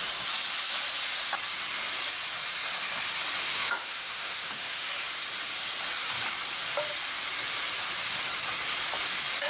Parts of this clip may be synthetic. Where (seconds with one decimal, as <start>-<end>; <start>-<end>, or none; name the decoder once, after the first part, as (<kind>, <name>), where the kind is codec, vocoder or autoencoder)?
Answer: 3.4-4.9 (autoencoder, DAC-VAE)